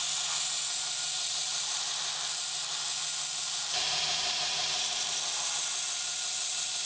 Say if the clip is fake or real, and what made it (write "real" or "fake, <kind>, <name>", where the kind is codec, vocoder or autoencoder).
real